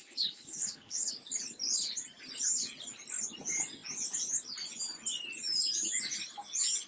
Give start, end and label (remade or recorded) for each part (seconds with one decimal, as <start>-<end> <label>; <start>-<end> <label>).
0.0-1.1 remade; 1.1-6.9 recorded